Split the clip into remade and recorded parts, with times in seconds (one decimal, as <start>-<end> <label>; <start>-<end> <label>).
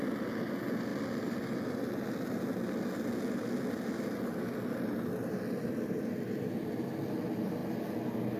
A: 0.0-8.4 recorded